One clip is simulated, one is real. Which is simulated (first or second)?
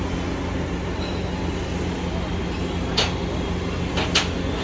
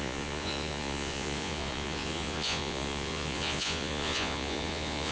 second